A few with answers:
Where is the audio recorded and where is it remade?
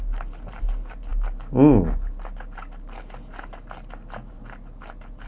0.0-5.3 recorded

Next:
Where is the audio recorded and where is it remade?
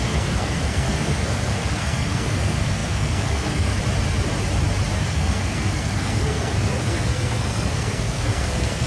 0.0-3.8 remade; 3.8-5.0 recorded; 5.0-8.9 remade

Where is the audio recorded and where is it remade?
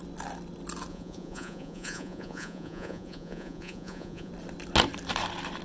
0.0-0.9 recorded; 0.9-4.3 remade; 4.3-5.6 recorded